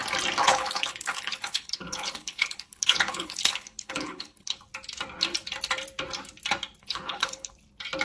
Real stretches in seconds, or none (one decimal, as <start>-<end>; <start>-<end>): 0.0-0.4; 4.6-6.8; 7.5-8.0